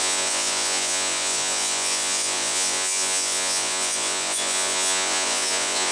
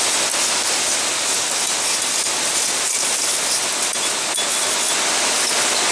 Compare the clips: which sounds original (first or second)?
second